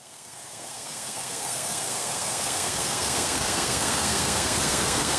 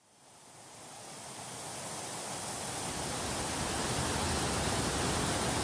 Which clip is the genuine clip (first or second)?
second